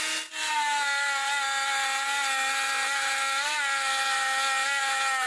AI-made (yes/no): no